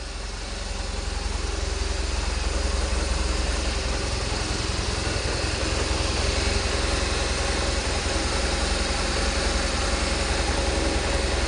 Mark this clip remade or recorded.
recorded